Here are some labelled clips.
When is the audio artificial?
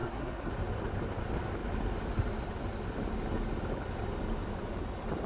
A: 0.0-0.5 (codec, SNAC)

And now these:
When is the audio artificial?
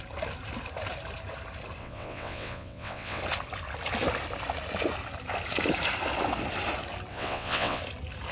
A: 1.8-3.2 (vocoder, WaveNeXt); 7.1-7.8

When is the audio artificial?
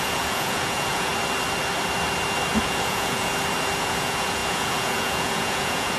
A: 0.0-1.1 (vocoder, Vocos); 2.6-3.3; 3.8-6.0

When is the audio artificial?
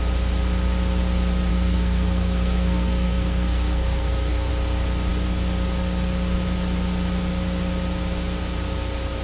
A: 1.5-4.5 (codec, SNAC)